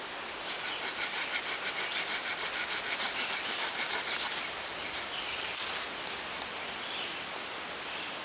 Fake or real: real